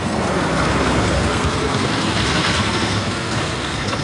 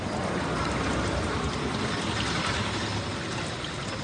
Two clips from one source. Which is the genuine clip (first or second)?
second